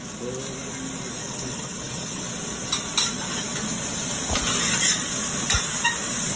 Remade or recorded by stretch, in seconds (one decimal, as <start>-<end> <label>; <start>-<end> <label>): 0.0-1.2 recorded; 1.2-2.2 remade; 2.2-6.4 recorded